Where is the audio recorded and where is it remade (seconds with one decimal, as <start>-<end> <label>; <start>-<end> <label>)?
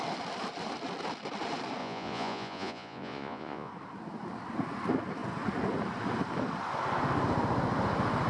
0.0-1.8 recorded; 1.8-3.7 remade; 3.7-8.3 recorded